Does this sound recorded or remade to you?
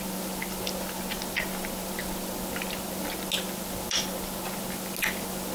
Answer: recorded